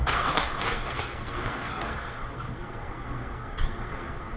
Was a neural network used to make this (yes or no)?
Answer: yes